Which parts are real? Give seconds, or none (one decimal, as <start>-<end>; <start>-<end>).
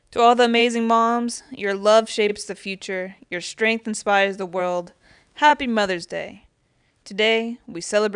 0.6-1.4; 2.3-4.6; 5.5-8.2